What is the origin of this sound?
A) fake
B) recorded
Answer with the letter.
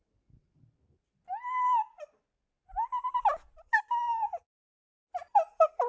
B